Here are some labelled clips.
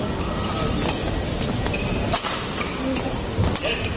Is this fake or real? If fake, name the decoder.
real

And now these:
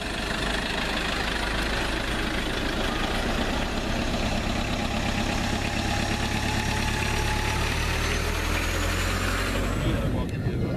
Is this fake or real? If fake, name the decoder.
real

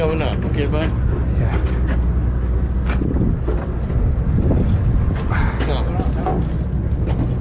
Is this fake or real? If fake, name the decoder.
real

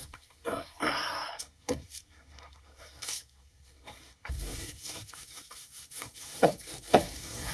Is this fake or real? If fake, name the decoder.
fake, codec, SNAC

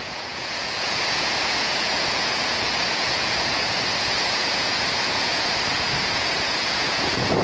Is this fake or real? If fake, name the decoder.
fake, vocoder, Vocos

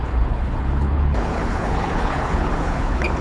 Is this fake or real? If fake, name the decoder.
fake, codec, HILCodec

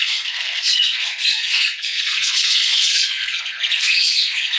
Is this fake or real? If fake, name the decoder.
fake, codec, SNAC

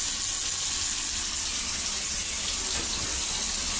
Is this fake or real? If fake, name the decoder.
real